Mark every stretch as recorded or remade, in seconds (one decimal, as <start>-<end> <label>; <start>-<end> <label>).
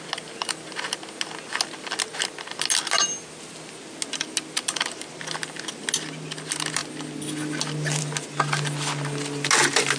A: 0.0-10.0 recorded